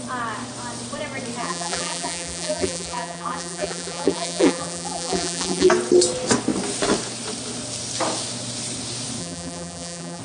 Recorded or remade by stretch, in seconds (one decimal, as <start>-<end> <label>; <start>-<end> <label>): 0.0-1.4 recorded; 1.4-5.7 remade; 5.7-9.2 recorded; 9.2-10.2 remade